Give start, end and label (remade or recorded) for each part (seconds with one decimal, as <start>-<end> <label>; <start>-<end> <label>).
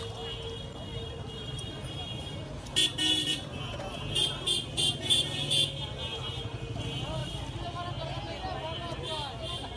0.0-0.9 recorded; 0.9-2.4 remade; 2.4-7.2 recorded; 7.2-7.9 remade; 7.9-9.8 recorded